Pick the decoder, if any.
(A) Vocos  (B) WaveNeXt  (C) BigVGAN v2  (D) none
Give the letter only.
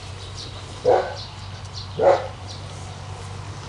D